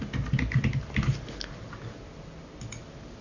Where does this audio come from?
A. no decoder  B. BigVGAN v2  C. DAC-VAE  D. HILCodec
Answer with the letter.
A